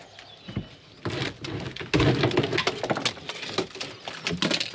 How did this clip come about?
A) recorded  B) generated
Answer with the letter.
A